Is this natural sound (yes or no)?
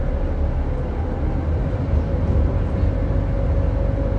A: yes